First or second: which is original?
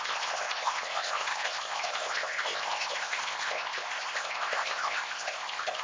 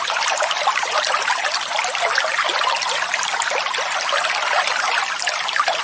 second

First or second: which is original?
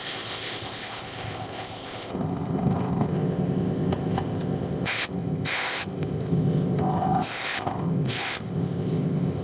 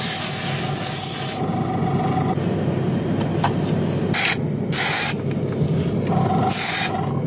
second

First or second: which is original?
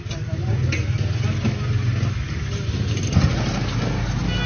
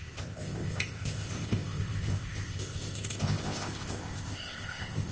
first